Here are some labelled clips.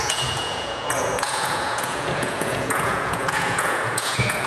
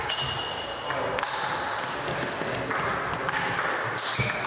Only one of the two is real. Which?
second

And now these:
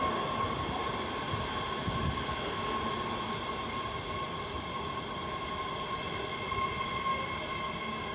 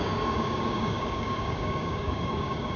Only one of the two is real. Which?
first